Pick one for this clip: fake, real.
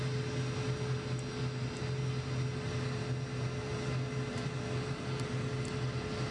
real